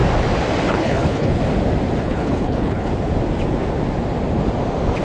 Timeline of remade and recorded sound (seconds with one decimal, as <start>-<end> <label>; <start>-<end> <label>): 0.0-0.7 recorded; 0.7-1.4 remade; 1.4-2.0 recorded; 2.0-2.9 remade; 2.9-5.0 recorded